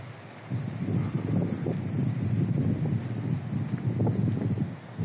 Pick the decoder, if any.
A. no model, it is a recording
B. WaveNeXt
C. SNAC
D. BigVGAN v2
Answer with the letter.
A